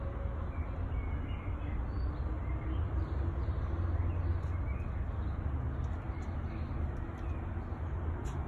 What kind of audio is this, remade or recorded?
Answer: recorded